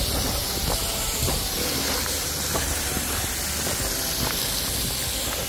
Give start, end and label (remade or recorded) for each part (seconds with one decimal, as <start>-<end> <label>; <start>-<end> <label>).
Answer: 0.0-3.3 remade; 3.3-5.5 recorded